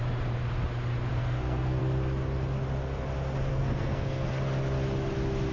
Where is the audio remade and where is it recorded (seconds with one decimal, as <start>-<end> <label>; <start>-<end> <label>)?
0.0-1.1 recorded; 1.1-1.8 remade; 1.8-3.5 recorded; 3.5-4.3 remade; 4.3-5.5 recorded